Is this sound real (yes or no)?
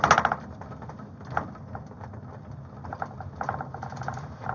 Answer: yes